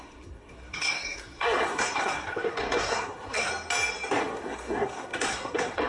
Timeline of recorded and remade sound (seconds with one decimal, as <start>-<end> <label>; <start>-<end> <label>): 0.0-3.5 remade; 3.5-4.2 recorded; 4.2-5.9 remade